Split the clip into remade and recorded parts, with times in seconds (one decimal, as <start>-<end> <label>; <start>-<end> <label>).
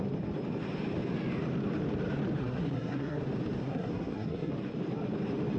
0.0-2.4 recorded; 2.4-3.2 remade; 3.2-3.6 recorded; 3.6-4.5 remade; 4.5-5.6 recorded